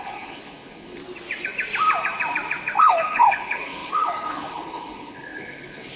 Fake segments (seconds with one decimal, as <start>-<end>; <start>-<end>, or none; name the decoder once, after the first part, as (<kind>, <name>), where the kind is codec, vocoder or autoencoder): 0.0-1.0 (codec, HILCodec); 2.8-6.0